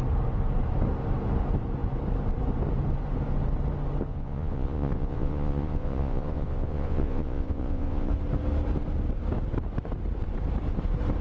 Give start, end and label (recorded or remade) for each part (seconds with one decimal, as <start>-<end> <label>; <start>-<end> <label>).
0.0-4.1 recorded; 4.1-8.1 remade; 8.1-11.2 recorded